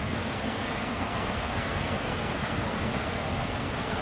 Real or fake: fake